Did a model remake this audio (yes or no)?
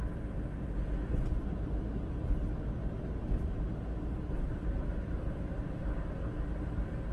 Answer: no